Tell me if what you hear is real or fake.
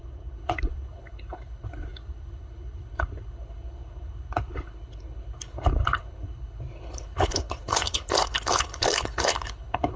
fake